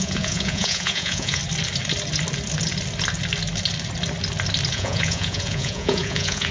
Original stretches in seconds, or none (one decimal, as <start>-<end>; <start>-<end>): 1.4-4.7